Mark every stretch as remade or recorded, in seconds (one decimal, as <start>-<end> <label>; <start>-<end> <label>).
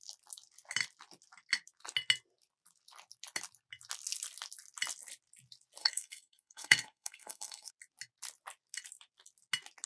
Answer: 0.0-5.8 recorded; 5.8-7.7 remade; 7.7-9.9 recorded